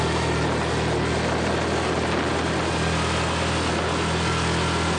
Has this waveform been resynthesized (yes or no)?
no